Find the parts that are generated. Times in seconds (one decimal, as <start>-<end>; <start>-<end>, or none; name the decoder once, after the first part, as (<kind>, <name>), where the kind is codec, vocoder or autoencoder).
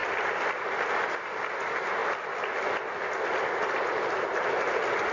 none